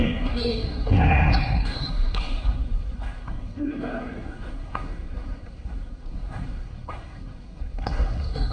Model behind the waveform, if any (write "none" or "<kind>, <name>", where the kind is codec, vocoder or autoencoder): codec, SNAC